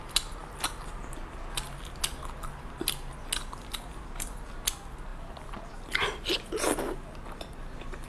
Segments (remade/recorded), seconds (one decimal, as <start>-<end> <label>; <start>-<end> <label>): 0.0-8.1 recorded